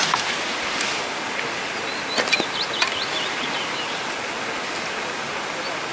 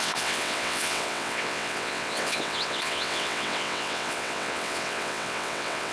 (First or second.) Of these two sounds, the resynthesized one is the second